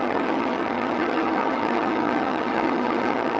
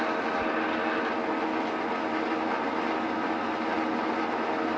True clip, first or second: second